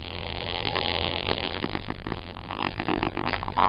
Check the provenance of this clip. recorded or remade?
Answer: remade